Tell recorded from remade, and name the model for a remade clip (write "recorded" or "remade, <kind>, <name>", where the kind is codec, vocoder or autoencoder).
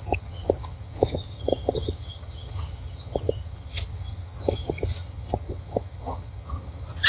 remade, vocoder, HiFi-GAN